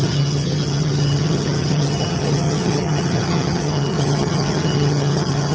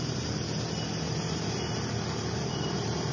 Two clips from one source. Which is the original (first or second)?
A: second